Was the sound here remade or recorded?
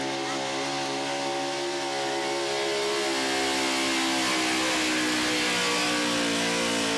recorded